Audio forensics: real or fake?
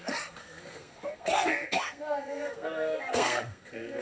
fake